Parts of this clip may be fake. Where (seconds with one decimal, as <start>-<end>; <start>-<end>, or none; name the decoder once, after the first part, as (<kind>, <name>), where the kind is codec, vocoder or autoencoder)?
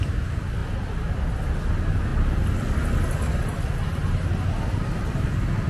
none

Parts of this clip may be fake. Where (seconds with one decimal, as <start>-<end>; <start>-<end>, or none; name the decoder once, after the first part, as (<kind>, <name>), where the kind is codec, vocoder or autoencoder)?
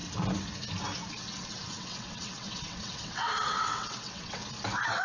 1.1-4.4 (vocoder, WaveNeXt)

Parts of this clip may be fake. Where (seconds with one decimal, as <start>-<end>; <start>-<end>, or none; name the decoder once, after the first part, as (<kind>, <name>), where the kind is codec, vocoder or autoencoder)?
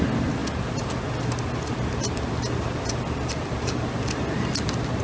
none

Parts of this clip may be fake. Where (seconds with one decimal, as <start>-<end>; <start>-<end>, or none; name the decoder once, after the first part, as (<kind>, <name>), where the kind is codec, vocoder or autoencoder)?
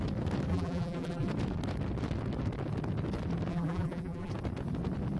0.5-1.3 (vocoder, BigVGAN v2); 3.5-4.3